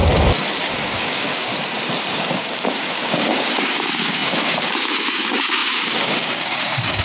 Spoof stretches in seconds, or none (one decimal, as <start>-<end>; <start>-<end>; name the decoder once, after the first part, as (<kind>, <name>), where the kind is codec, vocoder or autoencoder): 0.7-1.5 (codec, DAC); 2.1-7.0